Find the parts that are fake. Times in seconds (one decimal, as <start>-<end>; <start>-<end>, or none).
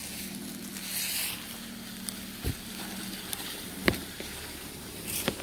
3.2-5.4